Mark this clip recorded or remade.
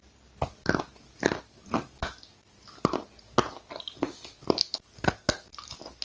recorded